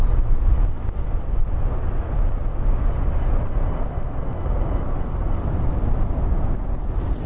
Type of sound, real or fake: real